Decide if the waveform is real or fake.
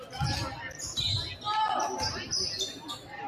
real